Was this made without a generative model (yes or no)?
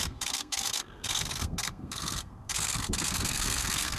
no